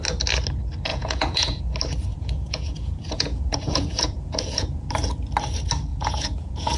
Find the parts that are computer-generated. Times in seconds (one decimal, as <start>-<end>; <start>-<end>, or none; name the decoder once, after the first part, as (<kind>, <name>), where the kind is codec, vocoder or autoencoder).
0.9-1.6 (vocoder, Vocos); 2.1-4.9; 5.9-6.8